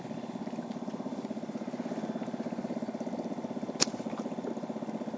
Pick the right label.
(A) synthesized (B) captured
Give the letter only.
B